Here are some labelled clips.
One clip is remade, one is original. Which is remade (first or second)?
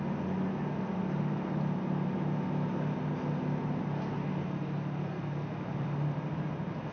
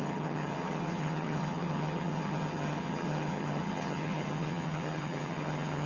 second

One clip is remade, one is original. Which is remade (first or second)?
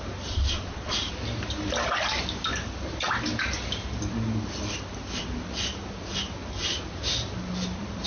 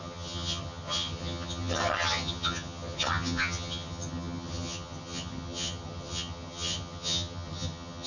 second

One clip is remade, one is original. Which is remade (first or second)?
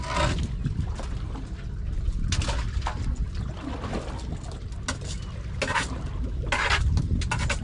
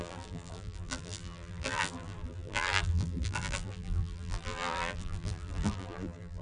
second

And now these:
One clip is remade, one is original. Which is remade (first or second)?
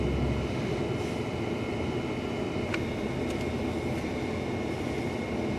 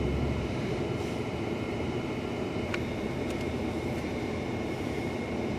second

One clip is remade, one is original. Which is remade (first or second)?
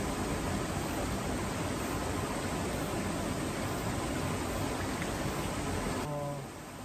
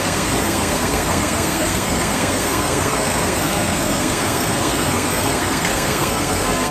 second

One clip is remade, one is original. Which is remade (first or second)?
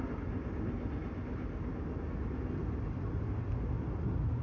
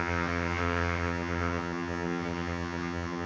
second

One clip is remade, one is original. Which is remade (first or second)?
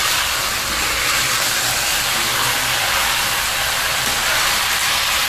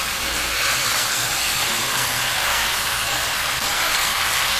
second